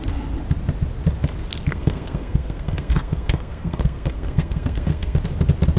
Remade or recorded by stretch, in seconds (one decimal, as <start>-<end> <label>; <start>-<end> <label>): 0.0-1.7 recorded; 1.7-5.2 remade; 5.2-5.8 recorded